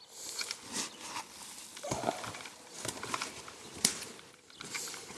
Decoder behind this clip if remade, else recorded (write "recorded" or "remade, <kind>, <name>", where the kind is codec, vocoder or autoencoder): recorded